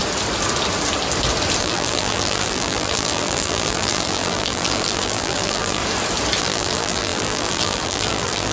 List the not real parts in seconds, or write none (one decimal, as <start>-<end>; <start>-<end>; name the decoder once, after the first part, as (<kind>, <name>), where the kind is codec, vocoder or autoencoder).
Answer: 1.6-5.8 (vocoder, BigVGAN v2); 6.4-8.5

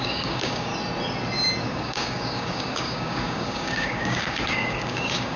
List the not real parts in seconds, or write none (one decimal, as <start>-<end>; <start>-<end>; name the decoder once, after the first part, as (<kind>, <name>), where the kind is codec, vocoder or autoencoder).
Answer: 0.0-0.7 (codec, DAC); 1.6-5.4

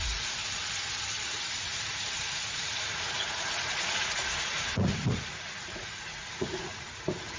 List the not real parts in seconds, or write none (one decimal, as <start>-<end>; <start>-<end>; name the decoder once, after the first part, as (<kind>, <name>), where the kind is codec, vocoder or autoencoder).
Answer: 0.0-0.4 (vocoder, Vocos); 1.5-7.4

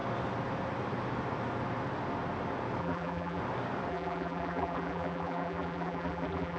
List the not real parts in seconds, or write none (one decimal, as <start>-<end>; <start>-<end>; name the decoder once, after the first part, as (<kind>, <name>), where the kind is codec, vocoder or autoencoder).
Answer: 2.8-3.4 (vocoder, BigVGAN v2); 3.9-6.6

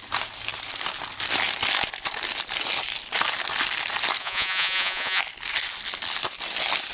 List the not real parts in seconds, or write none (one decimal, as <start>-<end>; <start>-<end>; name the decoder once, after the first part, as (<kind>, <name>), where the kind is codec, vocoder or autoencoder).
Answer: 4.2-5.2 (vocoder, Vocos)

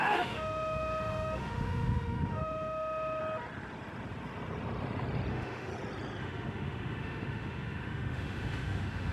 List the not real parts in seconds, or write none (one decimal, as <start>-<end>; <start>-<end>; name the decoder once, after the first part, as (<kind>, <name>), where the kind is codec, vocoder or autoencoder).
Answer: 0.0-3.2 (autoencoder, DAC-VAE); 5.3-5.7; 6.2-9.1

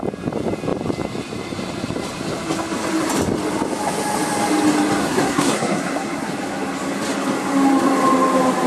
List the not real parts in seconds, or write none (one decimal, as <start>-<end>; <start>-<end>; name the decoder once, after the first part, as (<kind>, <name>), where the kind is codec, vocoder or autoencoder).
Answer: 5.0-6.3 (codec, SNAC)

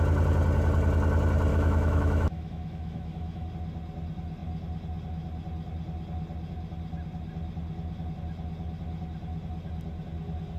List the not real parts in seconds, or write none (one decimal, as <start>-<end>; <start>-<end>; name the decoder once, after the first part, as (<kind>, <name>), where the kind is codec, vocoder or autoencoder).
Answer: 1.5-3.5 (autoencoder, DAC-VAE)